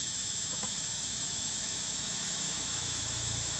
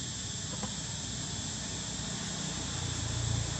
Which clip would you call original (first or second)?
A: second